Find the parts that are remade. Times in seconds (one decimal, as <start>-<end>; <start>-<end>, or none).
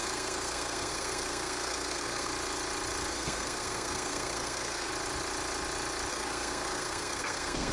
0.0-2.3; 3.1-4.9; 6.1-7.7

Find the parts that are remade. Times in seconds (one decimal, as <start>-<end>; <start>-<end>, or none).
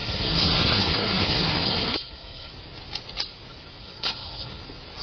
0.0-2.5; 3.8-4.6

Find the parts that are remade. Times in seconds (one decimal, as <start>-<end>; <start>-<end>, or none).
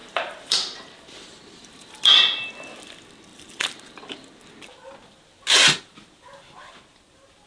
0.0-2.5; 3.3-4.3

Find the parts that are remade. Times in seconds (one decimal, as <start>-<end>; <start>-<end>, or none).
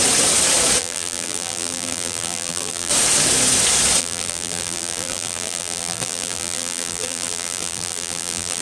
0.8-2.9; 4.0-8.6